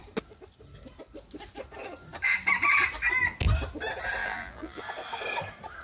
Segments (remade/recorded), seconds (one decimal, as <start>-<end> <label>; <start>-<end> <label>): 0.0-4.2 recorded; 4.2-4.8 remade; 4.8-5.8 recorded

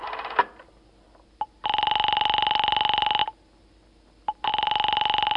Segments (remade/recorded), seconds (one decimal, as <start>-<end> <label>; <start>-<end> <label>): 0.0-5.4 recorded

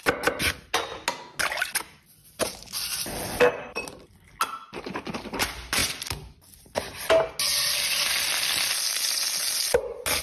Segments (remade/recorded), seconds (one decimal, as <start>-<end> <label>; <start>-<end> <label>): 0.0-10.2 recorded

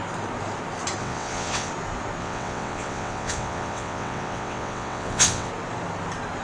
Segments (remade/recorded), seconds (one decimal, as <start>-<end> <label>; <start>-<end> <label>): 0.0-1.0 recorded; 1.0-1.7 remade; 1.7-2.2 recorded; 2.2-5.5 remade; 5.5-6.4 recorded

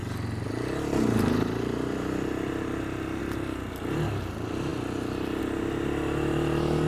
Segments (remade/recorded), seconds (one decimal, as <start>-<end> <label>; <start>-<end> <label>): 0.0-6.9 recorded

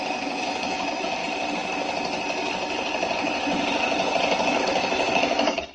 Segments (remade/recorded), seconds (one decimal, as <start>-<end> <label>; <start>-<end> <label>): 0.0-1.2 remade; 1.2-4.6 recorded; 4.6-5.7 remade

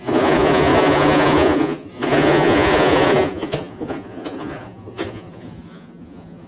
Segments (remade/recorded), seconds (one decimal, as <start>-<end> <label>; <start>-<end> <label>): 0.0-6.5 remade

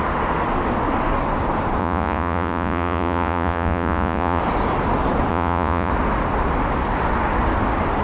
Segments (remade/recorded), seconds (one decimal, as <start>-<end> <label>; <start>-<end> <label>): 0.0-1.8 recorded; 1.8-4.4 remade; 4.4-5.3 recorded; 5.3-5.9 remade; 5.9-8.0 recorded